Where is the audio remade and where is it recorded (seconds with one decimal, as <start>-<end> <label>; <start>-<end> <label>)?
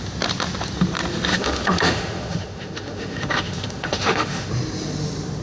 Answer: 0.0-1.3 recorded; 1.3-4.5 remade; 4.5-5.4 recorded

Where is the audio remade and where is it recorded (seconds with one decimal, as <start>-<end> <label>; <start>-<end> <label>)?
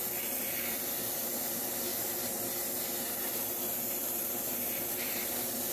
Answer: 0.0-5.7 recorded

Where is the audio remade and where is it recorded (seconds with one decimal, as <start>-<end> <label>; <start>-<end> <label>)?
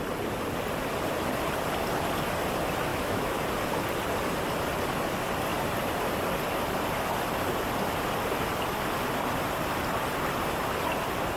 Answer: 0.0-2.9 recorded; 2.9-3.4 remade; 3.4-11.4 recorded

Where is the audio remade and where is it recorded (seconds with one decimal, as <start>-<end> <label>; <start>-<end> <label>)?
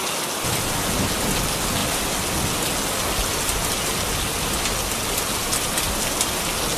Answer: 0.0-6.8 recorded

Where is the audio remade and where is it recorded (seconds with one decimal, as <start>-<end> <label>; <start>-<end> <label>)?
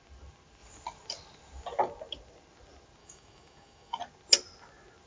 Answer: 0.0-3.0 recorded; 3.0-4.0 remade; 4.0-5.1 recorded